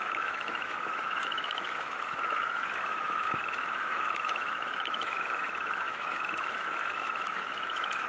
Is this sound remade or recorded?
remade